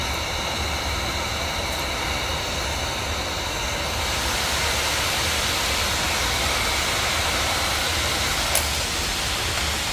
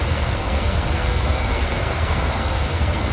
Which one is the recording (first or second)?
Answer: first